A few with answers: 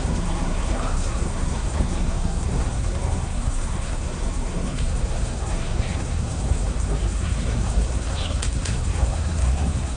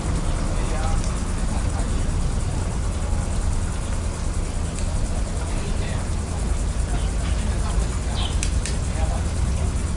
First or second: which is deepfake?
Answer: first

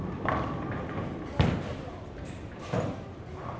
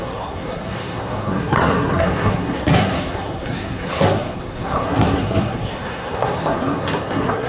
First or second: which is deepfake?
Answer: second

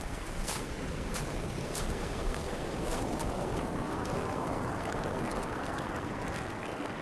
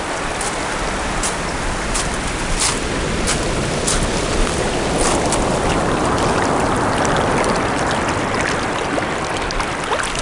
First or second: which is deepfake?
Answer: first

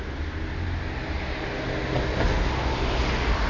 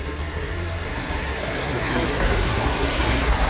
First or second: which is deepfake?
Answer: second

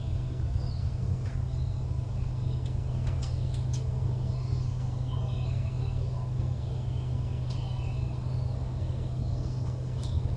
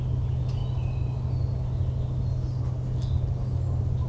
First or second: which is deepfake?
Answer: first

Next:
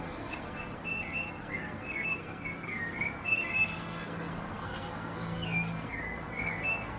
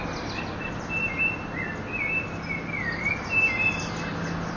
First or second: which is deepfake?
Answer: first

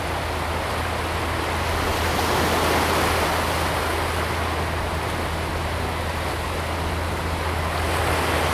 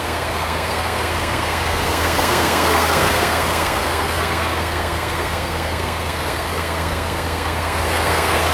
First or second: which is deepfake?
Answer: second